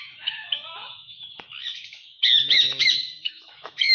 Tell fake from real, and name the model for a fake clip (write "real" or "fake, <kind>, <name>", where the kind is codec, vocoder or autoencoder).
fake, autoencoder, DAC-VAE